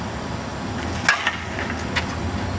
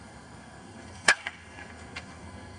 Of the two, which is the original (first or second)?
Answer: first